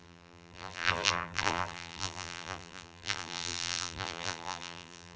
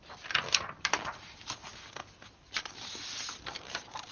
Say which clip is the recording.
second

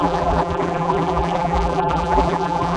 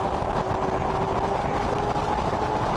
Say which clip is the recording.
second